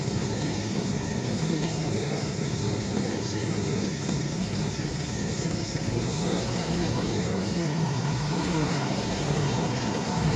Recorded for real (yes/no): no